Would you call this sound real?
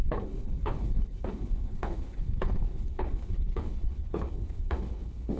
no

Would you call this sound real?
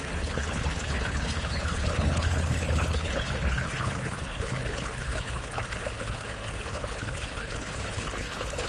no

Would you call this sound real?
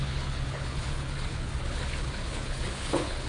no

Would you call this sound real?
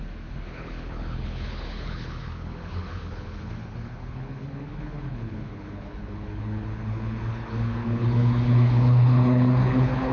no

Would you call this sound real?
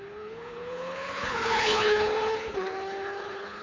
no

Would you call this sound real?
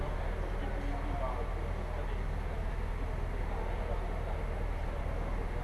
yes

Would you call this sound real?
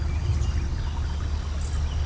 yes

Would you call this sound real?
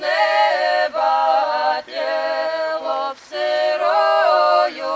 yes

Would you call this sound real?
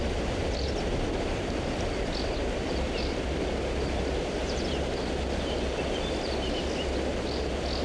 yes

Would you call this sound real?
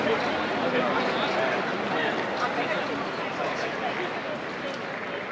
yes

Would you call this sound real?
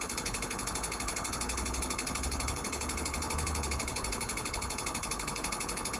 no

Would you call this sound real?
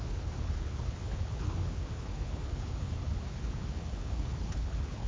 no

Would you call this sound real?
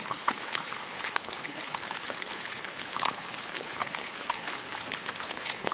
no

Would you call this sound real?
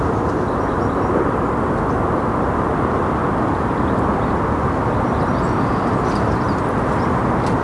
yes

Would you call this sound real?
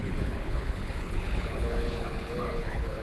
no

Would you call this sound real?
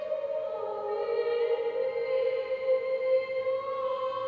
yes